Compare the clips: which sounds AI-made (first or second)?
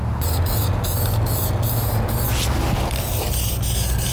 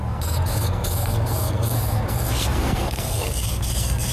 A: second